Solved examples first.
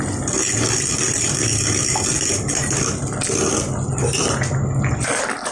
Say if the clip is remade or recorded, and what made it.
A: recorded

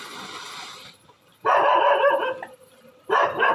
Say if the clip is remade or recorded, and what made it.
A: remade, vocoder, BigVGAN v2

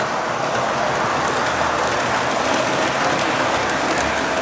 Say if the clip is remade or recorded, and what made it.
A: recorded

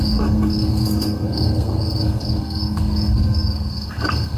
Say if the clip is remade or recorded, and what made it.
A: remade, codec, SNAC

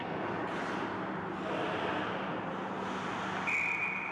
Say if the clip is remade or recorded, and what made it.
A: recorded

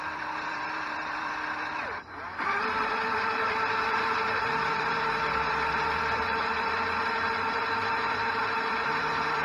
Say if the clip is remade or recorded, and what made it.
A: remade, vocoder, BigVGAN v2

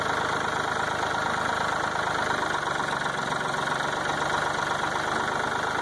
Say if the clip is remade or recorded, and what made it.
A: recorded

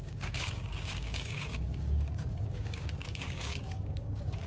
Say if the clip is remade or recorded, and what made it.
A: remade, codec, DAC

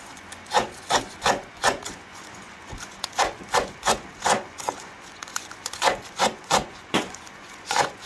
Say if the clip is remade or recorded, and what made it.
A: remade, vocoder, Vocos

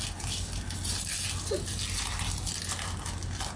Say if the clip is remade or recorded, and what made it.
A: recorded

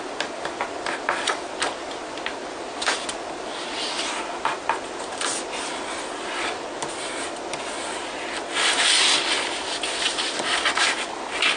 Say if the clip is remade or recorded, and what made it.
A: recorded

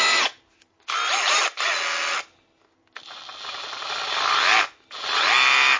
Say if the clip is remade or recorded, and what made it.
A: recorded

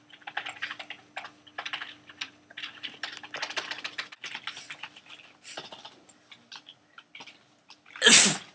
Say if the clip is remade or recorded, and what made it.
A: recorded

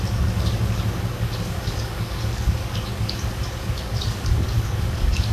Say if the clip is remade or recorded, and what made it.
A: remade, codec, DAC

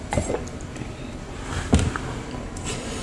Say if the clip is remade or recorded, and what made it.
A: recorded